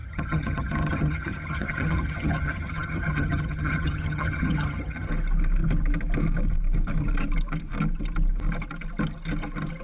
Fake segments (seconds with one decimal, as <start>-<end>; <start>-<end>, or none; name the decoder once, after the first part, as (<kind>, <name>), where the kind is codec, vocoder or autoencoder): 0.0-5.1 (vocoder, HiFi-GAN)